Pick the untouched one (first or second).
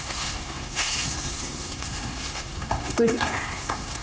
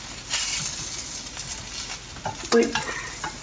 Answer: second